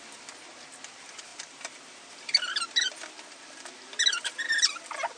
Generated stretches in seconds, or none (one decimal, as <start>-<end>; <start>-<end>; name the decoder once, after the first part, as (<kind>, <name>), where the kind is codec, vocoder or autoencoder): none